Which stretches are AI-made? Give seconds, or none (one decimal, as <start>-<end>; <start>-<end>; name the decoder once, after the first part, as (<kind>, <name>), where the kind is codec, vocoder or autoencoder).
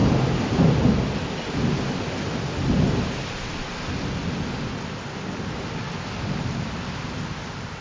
none